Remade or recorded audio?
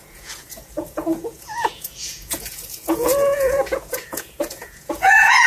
remade